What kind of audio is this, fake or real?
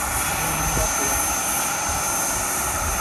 real